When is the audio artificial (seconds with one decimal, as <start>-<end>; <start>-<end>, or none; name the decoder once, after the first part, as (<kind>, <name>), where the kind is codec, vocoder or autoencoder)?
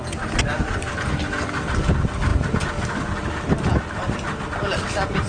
none